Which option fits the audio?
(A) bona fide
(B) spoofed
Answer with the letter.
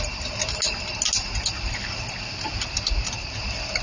A